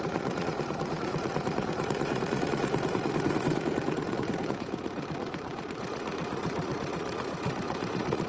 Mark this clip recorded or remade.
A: remade